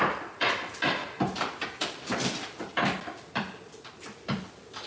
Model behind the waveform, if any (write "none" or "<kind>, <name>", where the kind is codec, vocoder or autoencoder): none